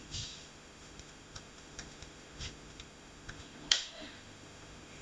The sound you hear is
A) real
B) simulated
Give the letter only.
B